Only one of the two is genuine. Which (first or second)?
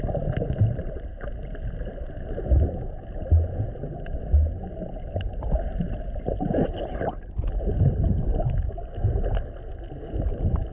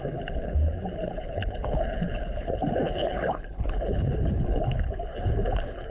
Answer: first